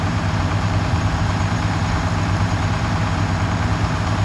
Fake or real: fake